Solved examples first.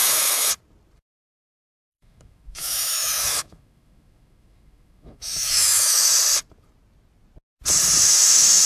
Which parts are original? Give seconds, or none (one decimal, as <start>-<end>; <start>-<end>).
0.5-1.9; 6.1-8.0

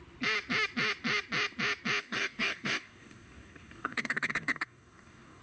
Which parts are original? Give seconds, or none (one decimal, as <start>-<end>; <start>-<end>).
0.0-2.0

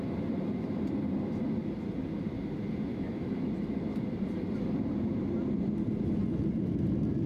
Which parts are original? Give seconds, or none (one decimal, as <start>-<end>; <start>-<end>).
0.0-2.9; 3.5-7.3

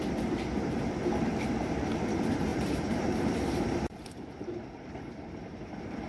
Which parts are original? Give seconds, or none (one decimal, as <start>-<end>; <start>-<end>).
0.0-2.5